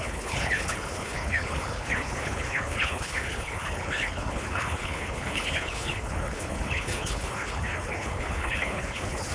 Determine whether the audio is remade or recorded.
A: remade